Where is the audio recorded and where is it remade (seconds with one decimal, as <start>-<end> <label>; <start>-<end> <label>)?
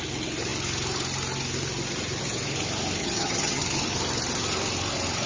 0.0-3.0 recorded; 3.0-3.6 remade; 3.6-5.3 recorded